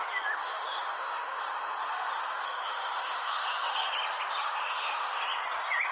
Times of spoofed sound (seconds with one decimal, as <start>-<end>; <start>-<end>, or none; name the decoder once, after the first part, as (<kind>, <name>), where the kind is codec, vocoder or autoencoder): 0.4-3.9 (autoencoder, DAC-VAE); 4.4-5.2